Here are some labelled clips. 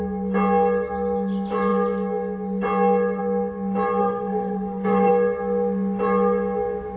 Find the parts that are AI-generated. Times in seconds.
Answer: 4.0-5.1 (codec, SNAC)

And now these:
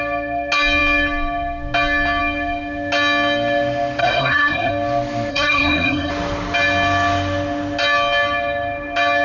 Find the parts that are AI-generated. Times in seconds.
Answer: 4.0-4.7 (codec, SNAC); 5.3-6.1

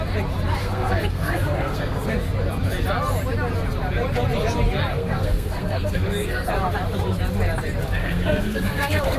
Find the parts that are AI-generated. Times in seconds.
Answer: 0.6-2.1 (codec, SNAC); 4.9-6.5; 8.0-9.2

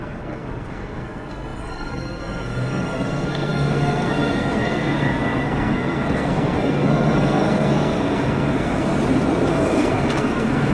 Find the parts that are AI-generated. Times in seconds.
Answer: 0.0-8.9 (codec, SNAC); 9.5-10.7

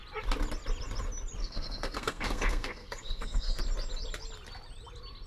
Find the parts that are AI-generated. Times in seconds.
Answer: 1.4-3.6 (codec, SNAC)

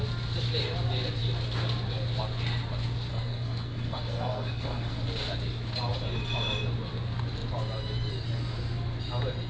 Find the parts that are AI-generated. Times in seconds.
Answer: 3.1-5.0 (codec, SNAC)